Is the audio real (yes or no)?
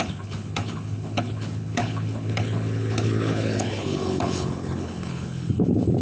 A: no